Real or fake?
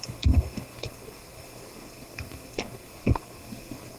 fake